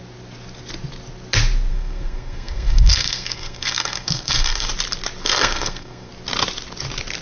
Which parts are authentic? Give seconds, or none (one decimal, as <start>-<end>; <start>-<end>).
0.0-1.7; 4.7-5.2; 6.1-7.2